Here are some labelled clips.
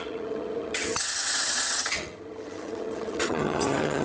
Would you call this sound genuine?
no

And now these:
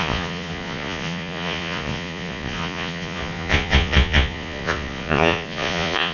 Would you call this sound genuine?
no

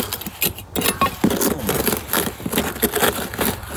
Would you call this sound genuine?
yes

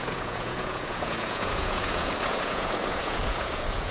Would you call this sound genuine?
no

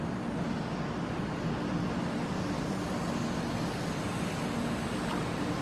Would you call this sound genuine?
yes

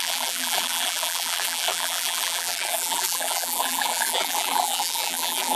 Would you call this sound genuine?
no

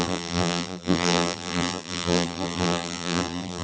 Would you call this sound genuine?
no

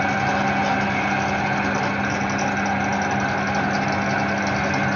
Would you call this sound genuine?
yes